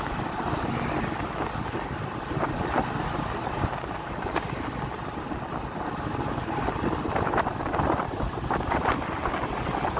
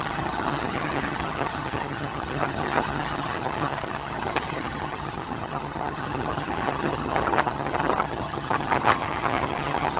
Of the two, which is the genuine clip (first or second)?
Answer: first